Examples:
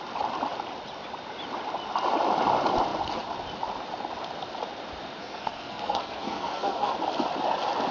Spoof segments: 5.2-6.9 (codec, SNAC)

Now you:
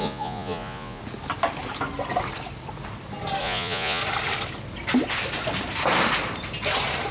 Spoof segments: 0.0-1.0 (vocoder, Vocos); 3.4-4.0